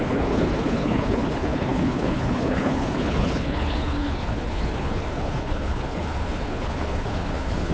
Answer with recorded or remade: remade